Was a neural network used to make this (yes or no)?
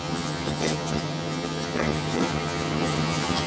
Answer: yes